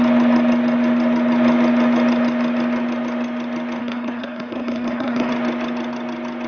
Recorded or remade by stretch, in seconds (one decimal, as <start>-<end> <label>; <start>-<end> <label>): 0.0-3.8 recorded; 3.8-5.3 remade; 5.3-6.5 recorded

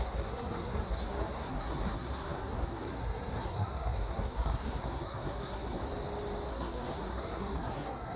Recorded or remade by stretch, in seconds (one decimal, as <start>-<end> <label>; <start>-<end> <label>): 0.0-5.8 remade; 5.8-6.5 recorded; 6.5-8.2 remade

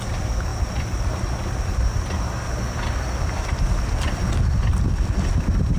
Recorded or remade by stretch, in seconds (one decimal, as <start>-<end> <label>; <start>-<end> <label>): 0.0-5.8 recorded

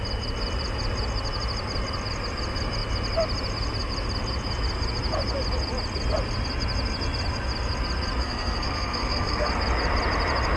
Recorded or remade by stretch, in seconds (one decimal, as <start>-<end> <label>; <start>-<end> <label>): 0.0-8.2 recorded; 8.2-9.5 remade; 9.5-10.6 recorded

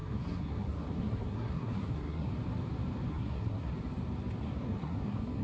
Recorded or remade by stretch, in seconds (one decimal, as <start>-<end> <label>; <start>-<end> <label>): 0.0-2.3 remade; 2.3-3.1 recorded; 3.1-3.7 remade; 3.7-4.4 recorded; 4.4-5.4 remade

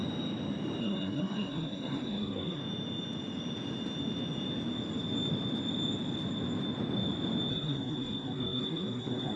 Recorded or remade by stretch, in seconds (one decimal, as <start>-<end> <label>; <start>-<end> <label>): 0.0-0.8 recorded; 0.8-2.6 remade; 2.6-7.5 recorded; 7.5-9.4 remade

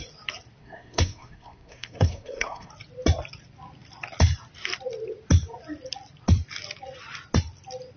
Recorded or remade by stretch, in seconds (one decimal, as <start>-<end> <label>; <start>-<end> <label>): 0.0-0.6 recorded; 0.6-2.7 remade; 2.7-8.0 recorded